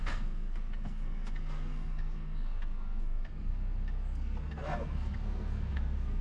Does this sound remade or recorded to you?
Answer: remade